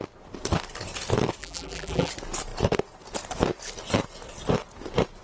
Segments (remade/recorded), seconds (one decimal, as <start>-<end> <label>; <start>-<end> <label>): 0.0-1.4 recorded; 1.4-2.1 remade; 2.1-5.2 recorded